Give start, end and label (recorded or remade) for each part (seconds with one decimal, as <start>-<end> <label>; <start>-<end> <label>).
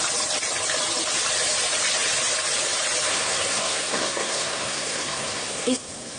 0.0-3.1 recorded; 3.1-6.2 remade